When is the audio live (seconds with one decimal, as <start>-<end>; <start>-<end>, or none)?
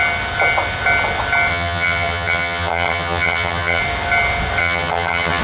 0.0-1.5; 3.8-4.6